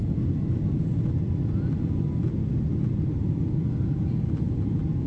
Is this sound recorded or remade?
recorded